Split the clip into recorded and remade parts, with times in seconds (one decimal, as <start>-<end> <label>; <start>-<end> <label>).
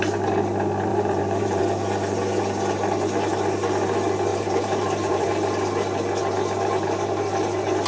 0.0-0.9 recorded; 0.9-1.6 remade; 1.6-4.3 recorded; 4.3-5.3 remade; 5.3-7.9 recorded